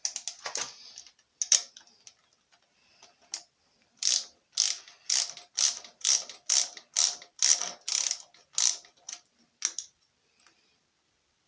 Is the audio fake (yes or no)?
no